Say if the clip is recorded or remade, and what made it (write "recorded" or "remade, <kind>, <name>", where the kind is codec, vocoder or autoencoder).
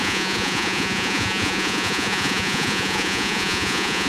remade, vocoder, Vocos